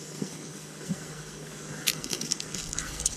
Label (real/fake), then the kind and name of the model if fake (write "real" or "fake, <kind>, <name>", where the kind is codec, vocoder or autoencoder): fake, codec, SNAC